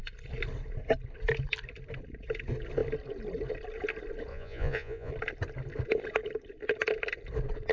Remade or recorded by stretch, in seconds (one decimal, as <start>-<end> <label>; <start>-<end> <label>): 0.0-4.3 recorded; 4.3-5.1 remade; 5.1-7.7 recorded